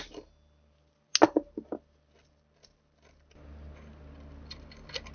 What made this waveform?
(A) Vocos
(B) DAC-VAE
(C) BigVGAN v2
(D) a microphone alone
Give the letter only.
D